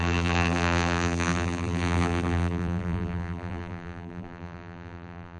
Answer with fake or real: fake